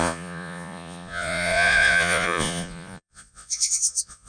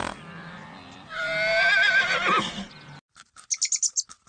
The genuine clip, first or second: second